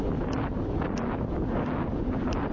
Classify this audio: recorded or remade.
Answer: recorded